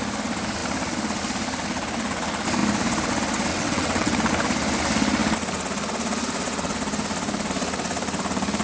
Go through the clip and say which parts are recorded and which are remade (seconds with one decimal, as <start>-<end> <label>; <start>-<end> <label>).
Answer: 0.0-3.5 recorded; 3.5-4.3 remade; 4.3-8.6 recorded